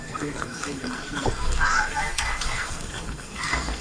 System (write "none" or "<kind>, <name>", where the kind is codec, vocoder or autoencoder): codec, SNAC